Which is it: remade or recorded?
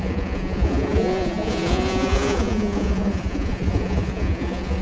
remade